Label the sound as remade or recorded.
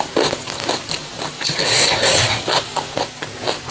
recorded